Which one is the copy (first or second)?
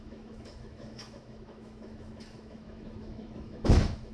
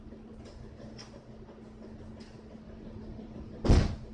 first